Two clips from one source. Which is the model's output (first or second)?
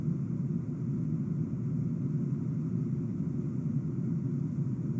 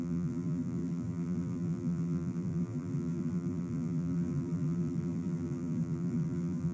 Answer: second